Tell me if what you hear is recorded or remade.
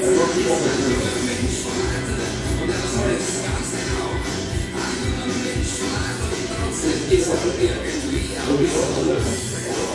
remade